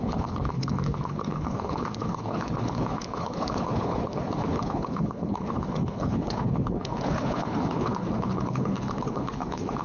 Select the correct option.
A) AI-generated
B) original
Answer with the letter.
A